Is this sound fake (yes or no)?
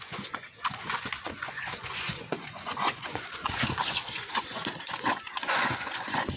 yes